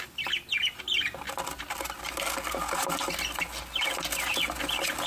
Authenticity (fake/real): real